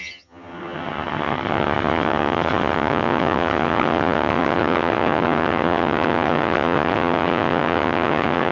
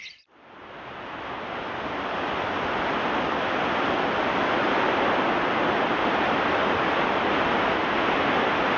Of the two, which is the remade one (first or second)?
first